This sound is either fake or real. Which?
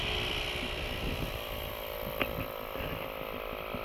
real